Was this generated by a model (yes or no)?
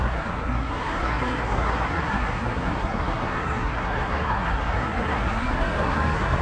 yes